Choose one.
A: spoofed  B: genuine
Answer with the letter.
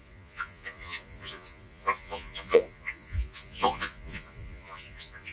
A